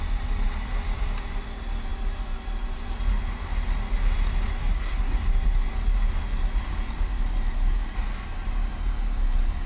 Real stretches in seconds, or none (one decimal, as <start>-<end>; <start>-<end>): 0.0-4.6; 5.2-9.7